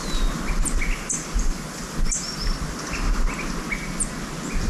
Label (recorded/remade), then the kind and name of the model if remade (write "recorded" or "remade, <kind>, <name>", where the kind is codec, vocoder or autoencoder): recorded